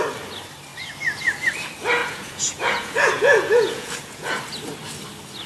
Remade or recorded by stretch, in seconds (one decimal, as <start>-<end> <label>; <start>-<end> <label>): 0.0-2.0 recorded; 2.0-4.4 remade; 4.4-5.5 recorded